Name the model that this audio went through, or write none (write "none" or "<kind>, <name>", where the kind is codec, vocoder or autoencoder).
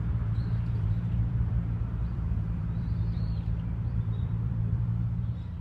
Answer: vocoder, BigVGAN v2